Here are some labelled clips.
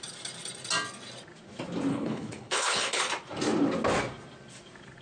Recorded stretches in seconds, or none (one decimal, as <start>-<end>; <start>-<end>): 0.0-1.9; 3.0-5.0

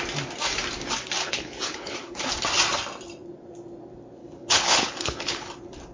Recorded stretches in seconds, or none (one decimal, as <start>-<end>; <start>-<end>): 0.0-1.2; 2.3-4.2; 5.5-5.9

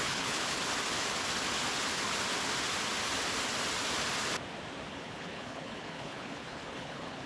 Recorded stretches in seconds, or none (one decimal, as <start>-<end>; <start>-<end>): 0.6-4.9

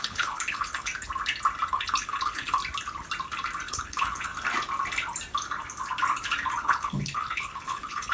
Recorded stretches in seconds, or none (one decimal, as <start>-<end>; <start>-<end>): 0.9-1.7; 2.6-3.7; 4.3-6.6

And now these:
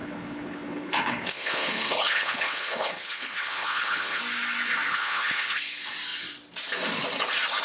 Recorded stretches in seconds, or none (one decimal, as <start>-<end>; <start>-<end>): 4.2-4.9; 5.6-7.6